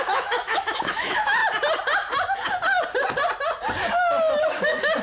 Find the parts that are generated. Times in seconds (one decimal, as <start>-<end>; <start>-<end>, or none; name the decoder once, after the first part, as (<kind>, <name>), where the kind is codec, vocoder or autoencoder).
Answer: 0.0-1.4 (autoencoder, DAC-VAE); 4.4-5.0